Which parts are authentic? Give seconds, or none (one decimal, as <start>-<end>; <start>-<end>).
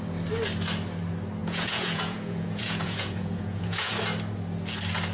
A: 0.0-1.4; 3.9-5.1